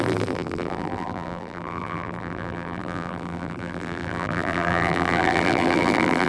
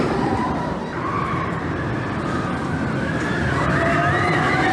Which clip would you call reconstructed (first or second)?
first